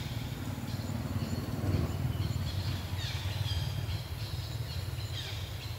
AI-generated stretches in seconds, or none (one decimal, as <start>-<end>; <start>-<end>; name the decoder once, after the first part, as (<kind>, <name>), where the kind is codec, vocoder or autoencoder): 1.2-2.9 (vocoder, BigVGAN v2)